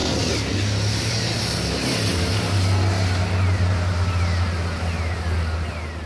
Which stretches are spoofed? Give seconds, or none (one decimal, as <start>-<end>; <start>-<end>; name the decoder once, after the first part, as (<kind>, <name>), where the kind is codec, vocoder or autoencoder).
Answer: none